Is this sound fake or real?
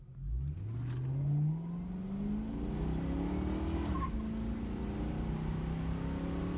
real